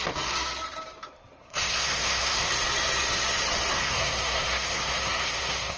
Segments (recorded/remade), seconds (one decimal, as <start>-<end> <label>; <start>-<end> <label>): 0.0-1.4 recorded; 1.4-2.5 remade; 2.5-3.7 recorded; 3.7-5.8 remade